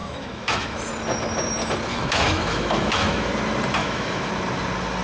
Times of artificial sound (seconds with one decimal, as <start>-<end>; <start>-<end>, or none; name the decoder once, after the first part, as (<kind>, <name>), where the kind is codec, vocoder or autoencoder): 0.0-0.9 (autoencoder, DAC-VAE); 1.9-3.3; 3.8-4.3